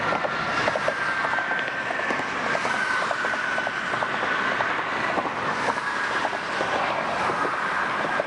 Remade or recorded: recorded